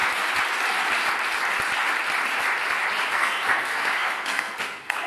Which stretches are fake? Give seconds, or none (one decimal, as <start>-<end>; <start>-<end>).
3.1-5.1